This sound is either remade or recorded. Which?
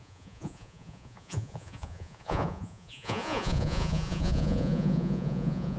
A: remade